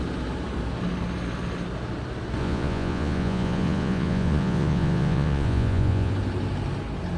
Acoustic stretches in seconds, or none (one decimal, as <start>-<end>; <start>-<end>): 0.0-2.4; 6.1-7.2

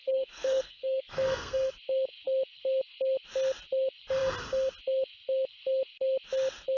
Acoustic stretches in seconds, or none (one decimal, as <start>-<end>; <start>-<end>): 1.7-6.8

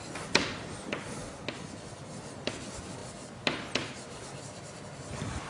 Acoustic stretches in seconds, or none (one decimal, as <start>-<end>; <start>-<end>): 1.2-2.1; 3.0-4.4

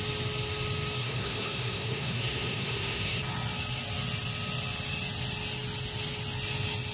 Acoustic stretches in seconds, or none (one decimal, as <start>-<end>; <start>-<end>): 0.0-1.0; 3.2-6.9

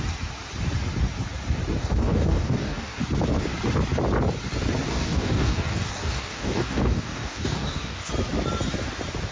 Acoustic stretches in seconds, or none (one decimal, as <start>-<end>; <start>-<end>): 0.0-1.8; 3.0-4.9; 8.1-9.3

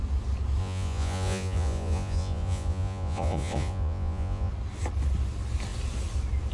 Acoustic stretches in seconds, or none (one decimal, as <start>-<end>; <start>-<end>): 0.0-0.6; 4.5-6.5

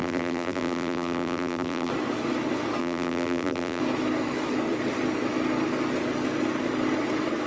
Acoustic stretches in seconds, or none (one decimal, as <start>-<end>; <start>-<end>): 1.9-2.8; 3.8-7.5

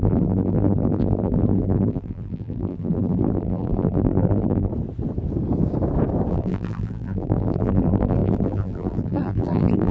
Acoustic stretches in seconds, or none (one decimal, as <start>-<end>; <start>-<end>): 4.7-6.3